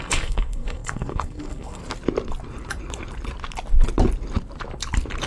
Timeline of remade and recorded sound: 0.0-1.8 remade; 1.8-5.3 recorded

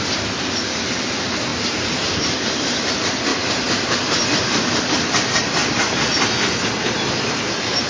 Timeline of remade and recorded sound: 0.0-1.5 recorded; 1.5-2.9 remade; 2.9-3.3 recorded; 3.3-4.8 remade; 4.8-5.6 recorded; 5.6-6.1 remade; 6.1-7.9 recorded

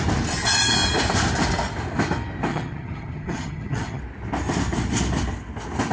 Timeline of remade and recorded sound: 0.0-2.5 recorded; 2.5-4.0 remade; 4.0-5.9 recorded

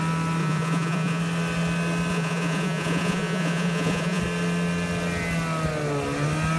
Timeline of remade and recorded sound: 0.0-0.4 recorded; 0.4-1.2 remade; 1.2-2.1 recorded; 2.1-4.2 remade; 4.2-6.6 recorded

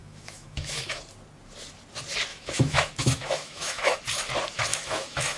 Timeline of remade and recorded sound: 0.0-1.0 remade; 1.0-2.3 recorded; 2.3-4.0 remade; 4.0-4.7 recorded; 4.7-5.4 remade